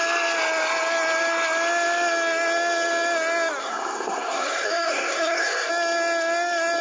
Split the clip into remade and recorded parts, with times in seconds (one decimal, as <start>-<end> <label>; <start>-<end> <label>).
0.0-3.6 recorded; 3.6-5.7 remade; 5.7-6.8 recorded